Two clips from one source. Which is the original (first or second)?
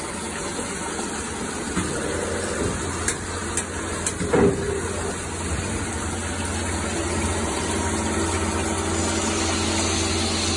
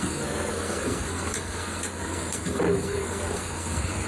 first